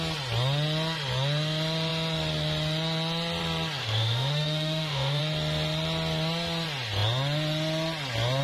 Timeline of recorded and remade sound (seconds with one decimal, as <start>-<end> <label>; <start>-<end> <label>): 0.0-3.8 recorded; 3.8-5.2 remade; 5.2-8.4 recorded